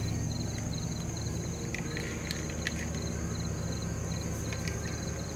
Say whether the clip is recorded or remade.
recorded